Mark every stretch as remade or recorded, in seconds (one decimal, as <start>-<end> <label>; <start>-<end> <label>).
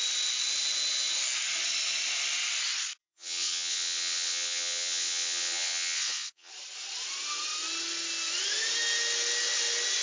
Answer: 0.0-3.0 recorded; 3.0-6.5 remade; 6.5-10.0 recorded